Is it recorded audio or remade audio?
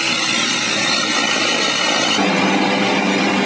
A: remade